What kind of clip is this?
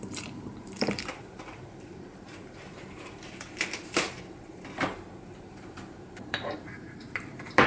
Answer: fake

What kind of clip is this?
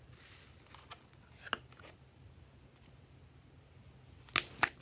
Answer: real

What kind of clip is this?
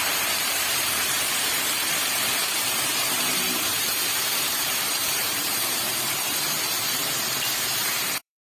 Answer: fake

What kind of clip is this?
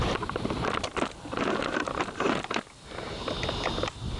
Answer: real